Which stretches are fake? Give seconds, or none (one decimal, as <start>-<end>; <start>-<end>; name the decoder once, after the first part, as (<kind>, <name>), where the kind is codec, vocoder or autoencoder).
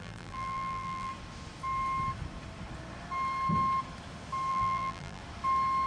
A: 0.0-1.1 (vocoder, BigVGAN v2); 4.5-5.2